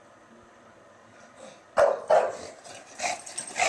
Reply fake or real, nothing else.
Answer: real